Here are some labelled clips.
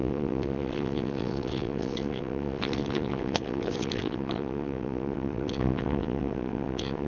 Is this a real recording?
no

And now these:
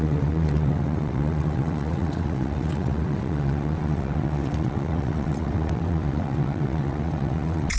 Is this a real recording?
no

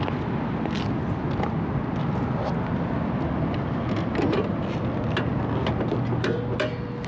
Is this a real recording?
yes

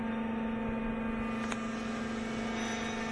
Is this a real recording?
yes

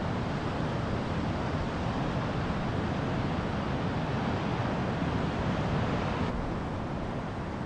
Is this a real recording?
yes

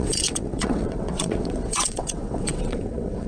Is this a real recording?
no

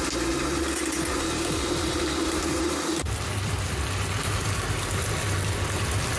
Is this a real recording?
yes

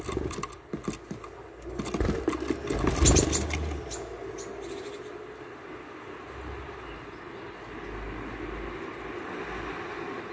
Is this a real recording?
yes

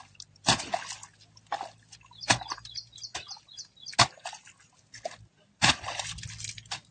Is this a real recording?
yes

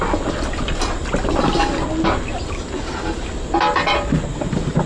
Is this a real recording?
yes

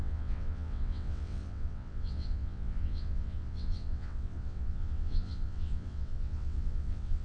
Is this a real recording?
no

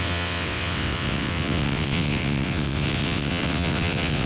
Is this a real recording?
no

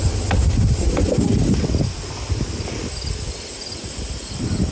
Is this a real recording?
yes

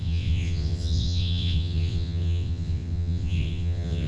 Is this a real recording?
no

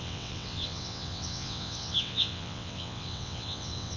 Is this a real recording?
no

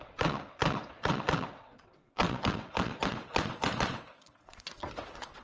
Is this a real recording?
no